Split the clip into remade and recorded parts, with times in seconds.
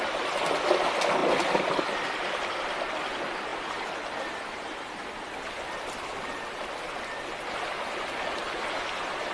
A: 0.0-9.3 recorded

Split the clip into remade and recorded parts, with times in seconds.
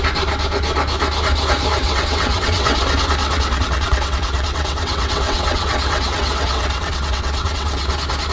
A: 0.0-1.8 recorded; 1.8-2.8 remade; 2.8-3.2 recorded; 3.2-7.9 remade; 7.9-8.3 recorded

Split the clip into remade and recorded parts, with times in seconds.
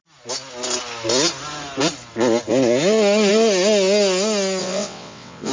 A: 0.0-4.6 recorded; 4.6-5.5 remade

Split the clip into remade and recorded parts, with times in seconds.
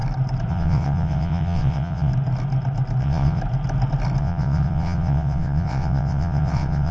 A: 0.0-0.5 recorded; 0.5-2.1 remade; 2.1-3.0 recorded; 3.0-3.4 remade; 3.4-4.2 recorded; 4.2-6.9 remade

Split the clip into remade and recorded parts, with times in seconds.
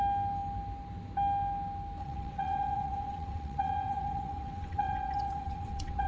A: 0.0-2.0 recorded; 2.0-6.1 remade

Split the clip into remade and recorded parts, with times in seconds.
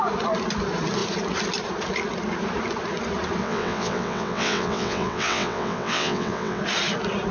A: 0.0-3.4 recorded; 3.4-6.6 remade; 6.6-7.3 recorded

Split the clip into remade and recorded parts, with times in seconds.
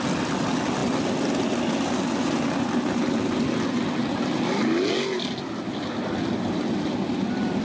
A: 0.0-7.6 recorded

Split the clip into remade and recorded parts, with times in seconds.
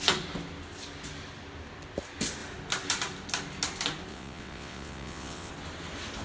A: 0.0-4.1 recorded; 4.1-5.5 remade; 5.5-6.2 recorded